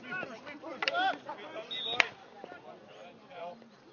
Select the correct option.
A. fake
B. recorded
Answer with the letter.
A